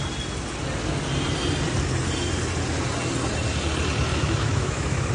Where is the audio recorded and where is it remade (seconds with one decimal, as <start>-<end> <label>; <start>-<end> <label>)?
0.0-4.1 recorded; 4.1-5.1 remade

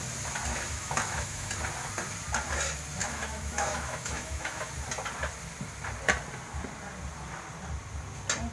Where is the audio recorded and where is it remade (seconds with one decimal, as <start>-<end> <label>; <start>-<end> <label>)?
0.0-0.5 recorded; 0.5-1.5 remade; 1.5-3.0 recorded; 3.0-4.7 remade; 4.7-8.5 recorded

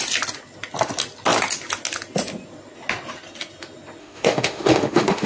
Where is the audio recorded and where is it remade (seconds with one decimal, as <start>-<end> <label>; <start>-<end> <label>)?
0.0-4.0 recorded; 4.0-5.3 remade

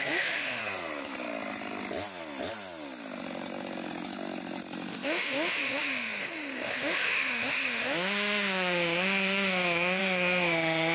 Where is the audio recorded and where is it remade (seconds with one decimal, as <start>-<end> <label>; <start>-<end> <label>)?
0.0-0.6 remade; 0.6-4.9 recorded; 4.9-10.9 remade

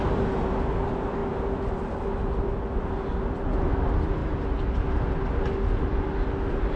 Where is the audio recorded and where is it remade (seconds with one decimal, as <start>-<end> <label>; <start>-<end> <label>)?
0.0-6.8 recorded

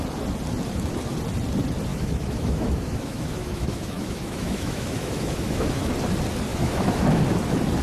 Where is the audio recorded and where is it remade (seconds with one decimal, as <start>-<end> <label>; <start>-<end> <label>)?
0.0-1.9 recorded; 1.9-5.9 remade; 5.9-6.5 recorded; 6.5-7.2 remade; 7.2-7.8 recorded